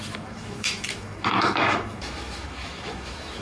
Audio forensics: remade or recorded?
remade